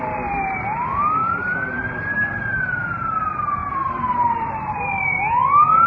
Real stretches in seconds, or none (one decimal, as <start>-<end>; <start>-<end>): 0.6-1.2; 2.6-3.6; 4.9-5.9